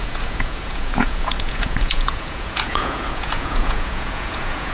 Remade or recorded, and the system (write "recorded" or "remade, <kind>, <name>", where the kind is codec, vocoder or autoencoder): remade, vocoder, Vocos